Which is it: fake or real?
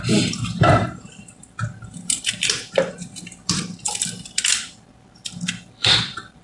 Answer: fake